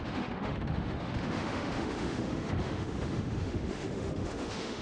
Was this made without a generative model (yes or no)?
no